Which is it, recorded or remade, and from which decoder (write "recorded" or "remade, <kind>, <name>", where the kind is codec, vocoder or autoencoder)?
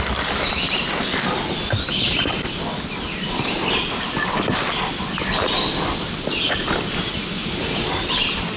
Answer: recorded